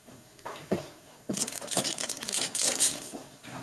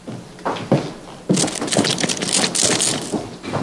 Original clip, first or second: second